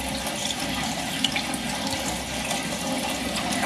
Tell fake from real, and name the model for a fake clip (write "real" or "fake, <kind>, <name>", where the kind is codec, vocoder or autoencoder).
real